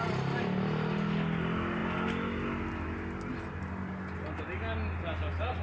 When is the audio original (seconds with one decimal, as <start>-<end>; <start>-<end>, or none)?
0.0-5.6